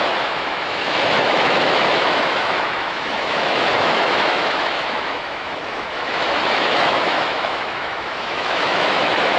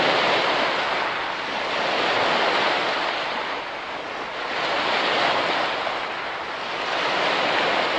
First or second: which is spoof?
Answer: first